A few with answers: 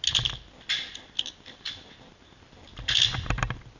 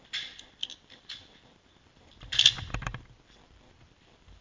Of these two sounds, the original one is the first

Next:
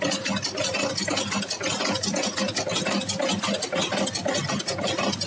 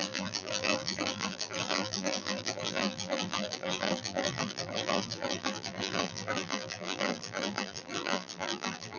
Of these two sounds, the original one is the first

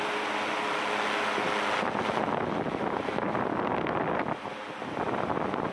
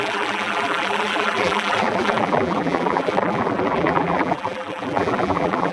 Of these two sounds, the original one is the first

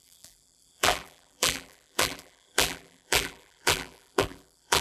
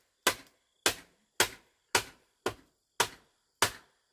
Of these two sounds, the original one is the second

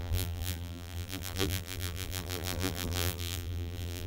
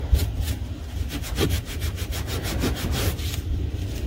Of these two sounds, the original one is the second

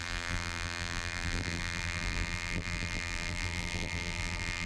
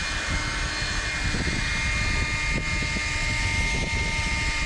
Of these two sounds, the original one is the second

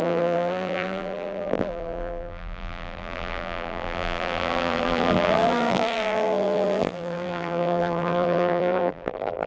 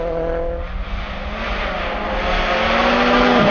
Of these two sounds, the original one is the second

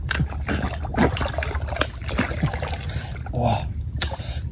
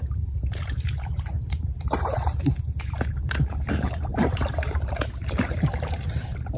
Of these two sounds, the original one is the first